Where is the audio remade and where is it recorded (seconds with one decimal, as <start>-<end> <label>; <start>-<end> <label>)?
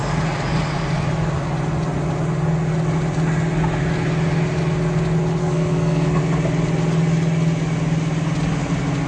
0.0-5.4 recorded; 5.4-6.2 remade; 6.2-9.1 recorded